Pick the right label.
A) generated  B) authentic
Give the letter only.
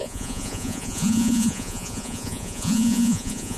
A